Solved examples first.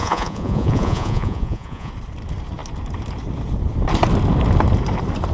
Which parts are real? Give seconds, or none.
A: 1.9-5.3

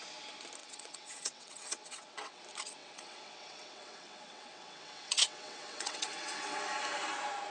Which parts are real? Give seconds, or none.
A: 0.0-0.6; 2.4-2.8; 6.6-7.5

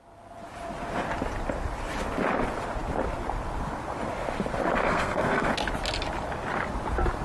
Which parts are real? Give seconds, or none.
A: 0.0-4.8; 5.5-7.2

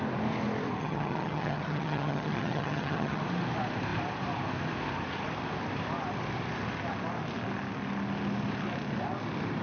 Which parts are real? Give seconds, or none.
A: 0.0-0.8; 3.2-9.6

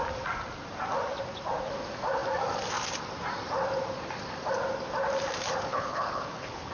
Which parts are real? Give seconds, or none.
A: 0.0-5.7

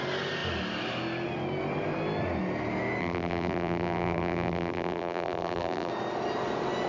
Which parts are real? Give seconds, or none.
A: 0.0-3.0; 5.9-6.9

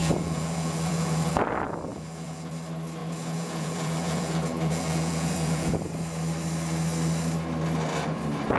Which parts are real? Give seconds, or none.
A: 1.3-1.9; 2.5-3.0; 5.7-8.6

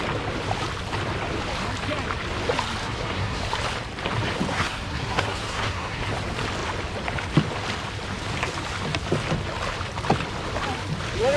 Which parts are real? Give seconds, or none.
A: 0.0-2.8; 3.4-4.5; 6.1-11.4